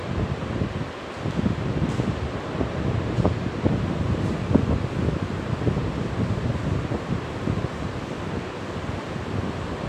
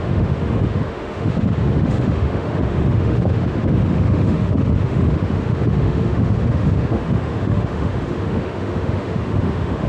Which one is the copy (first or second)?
second